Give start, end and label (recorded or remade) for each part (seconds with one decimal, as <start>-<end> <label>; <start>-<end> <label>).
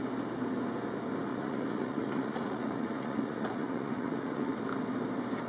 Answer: 0.0-1.3 recorded; 1.3-4.6 remade; 4.6-5.5 recorded